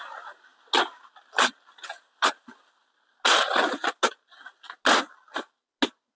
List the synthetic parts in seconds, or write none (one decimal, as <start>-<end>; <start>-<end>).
none